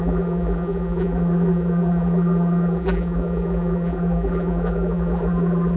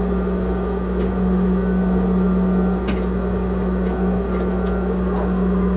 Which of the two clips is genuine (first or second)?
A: second